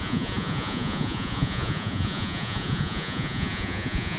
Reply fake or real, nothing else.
fake